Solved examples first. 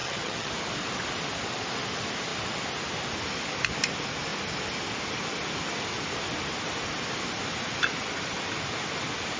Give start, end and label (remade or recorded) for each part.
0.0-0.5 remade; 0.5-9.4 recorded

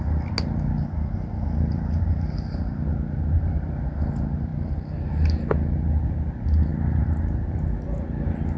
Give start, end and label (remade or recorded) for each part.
0.0-8.6 recorded